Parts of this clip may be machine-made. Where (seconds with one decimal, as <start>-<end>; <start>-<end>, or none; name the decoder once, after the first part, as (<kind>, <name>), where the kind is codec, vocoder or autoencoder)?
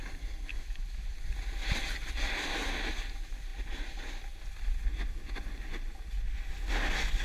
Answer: 0.5-1.1 (autoencoder, DAC-VAE)